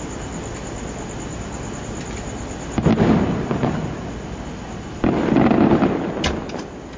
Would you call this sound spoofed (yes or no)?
no